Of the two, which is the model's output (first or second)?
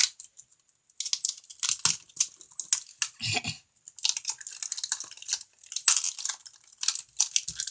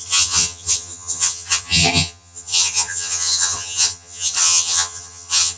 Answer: second